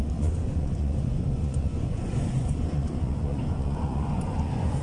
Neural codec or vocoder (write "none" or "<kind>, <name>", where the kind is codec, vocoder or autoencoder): vocoder, Vocos